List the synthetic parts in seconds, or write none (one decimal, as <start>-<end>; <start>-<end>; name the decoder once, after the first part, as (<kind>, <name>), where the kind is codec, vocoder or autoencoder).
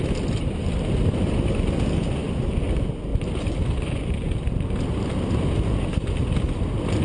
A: none